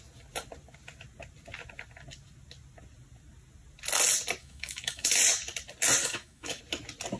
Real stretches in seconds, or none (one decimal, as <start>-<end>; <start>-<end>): 0.0-4.4; 5.2-6.0; 6.6-7.2